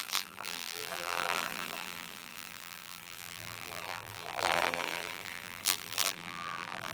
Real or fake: fake